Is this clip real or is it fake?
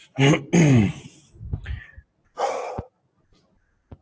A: real